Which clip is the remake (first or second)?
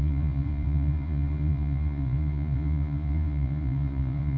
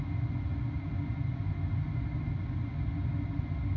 first